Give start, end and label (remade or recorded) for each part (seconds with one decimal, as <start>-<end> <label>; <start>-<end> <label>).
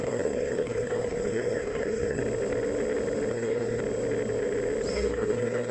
0.0-2.2 remade; 2.2-3.3 recorded; 3.3-3.8 remade; 3.8-4.9 recorded; 4.9-5.7 remade